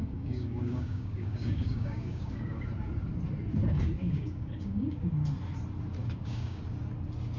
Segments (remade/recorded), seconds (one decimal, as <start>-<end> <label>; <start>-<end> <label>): 0.0-2.7 remade; 2.7-4.0 recorded; 4.0-5.0 remade; 5.0-6.0 recorded; 6.0-6.6 remade; 6.6-7.4 recorded